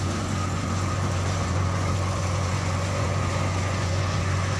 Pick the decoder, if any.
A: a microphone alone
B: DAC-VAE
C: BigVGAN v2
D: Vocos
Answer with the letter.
D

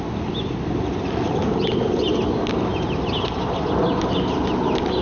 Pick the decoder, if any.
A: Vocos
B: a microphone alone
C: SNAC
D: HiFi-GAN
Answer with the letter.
B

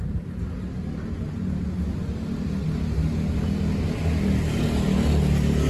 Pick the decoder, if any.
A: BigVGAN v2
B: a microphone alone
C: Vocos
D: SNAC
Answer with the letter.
B